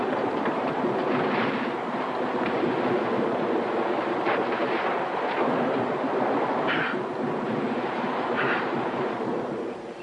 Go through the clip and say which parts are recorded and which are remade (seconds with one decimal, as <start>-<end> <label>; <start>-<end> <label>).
0.0-2.7 remade; 2.7-3.2 recorded; 3.2-10.0 remade